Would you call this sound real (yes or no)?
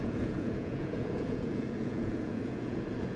no